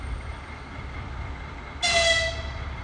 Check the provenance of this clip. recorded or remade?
recorded